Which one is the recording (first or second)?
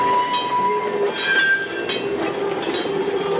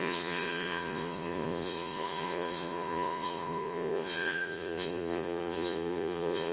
first